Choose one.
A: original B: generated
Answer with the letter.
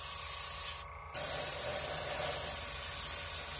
A